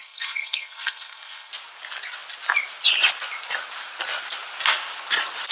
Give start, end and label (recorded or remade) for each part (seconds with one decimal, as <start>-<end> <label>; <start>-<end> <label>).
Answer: 0.0-1.5 remade; 1.5-5.5 recorded